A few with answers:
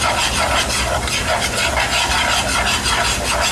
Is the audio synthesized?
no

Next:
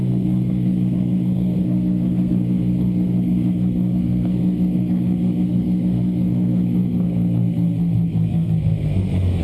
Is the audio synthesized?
yes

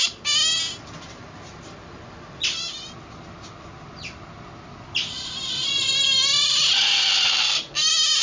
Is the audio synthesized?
no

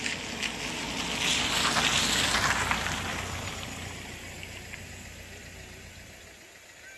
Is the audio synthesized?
no